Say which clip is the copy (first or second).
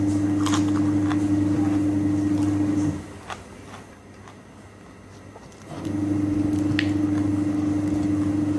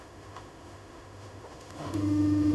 second